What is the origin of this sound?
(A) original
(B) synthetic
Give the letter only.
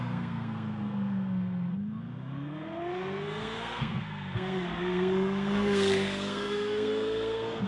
B